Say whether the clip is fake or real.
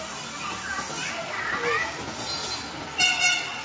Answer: real